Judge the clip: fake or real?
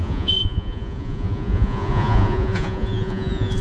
fake